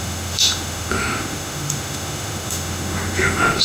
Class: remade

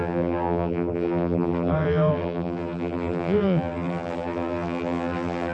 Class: remade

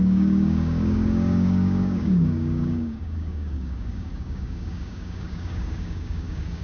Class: remade